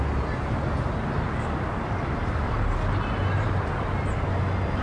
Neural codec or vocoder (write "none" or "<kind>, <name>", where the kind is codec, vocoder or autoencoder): none